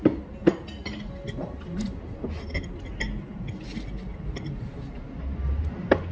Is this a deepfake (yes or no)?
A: no